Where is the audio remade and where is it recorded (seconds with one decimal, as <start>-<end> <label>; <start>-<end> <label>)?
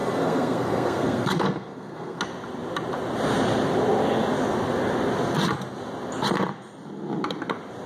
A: 0.0-2.2 remade; 2.2-7.9 recorded